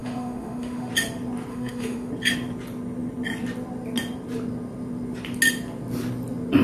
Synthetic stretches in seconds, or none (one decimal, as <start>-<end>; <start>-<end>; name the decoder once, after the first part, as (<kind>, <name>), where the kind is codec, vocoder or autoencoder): 0.0-0.9 (autoencoder, DAC-VAE); 1.5-2.1